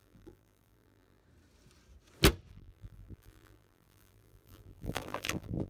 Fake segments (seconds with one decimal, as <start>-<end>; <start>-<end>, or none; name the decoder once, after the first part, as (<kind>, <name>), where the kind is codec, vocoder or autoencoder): 0.0-1.2 (vocoder, BigVGAN v2); 2.5-5.7